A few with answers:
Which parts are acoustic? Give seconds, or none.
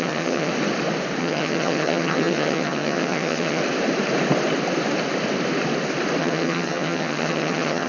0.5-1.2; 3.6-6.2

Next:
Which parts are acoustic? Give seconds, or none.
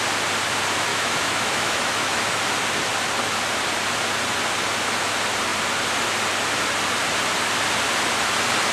0.0-0.9; 2.4-8.7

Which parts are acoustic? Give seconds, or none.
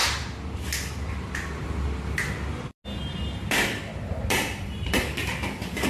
0.0-3.5; 3.9-5.0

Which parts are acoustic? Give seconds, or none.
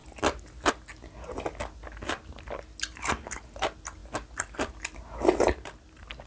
0.0-6.3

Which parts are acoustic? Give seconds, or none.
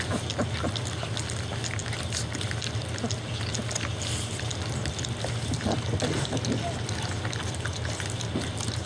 0.0-8.9